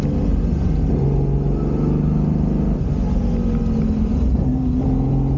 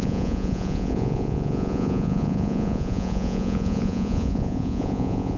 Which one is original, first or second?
first